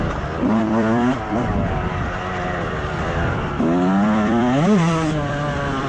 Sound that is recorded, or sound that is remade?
remade